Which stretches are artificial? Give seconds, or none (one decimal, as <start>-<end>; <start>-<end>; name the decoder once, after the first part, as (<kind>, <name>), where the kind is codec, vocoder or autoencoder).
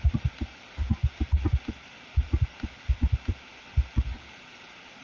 0.0-1.0 (vocoder, BigVGAN v2); 2.1-3.5